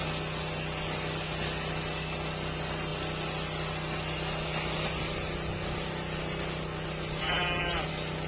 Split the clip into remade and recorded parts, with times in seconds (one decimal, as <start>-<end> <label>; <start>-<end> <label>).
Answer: 0.0-8.3 recorded